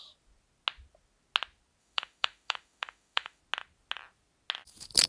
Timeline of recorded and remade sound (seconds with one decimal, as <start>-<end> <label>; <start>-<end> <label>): 0.0-1.8 recorded; 1.8-3.4 remade; 3.4-5.1 recorded

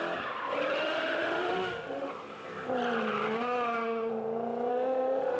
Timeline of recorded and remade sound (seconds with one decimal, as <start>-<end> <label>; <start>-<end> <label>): 0.0-0.7 recorded; 0.7-2.1 remade; 2.1-3.3 recorded; 3.3-4.1 remade; 4.1-4.7 recorded; 4.7-5.4 remade